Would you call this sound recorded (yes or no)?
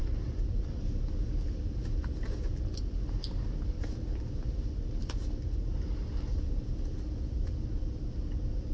yes